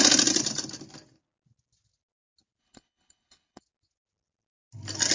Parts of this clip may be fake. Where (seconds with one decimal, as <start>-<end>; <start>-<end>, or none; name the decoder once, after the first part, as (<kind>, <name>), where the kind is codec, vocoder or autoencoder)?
2.6-3.6 (codec, HILCodec)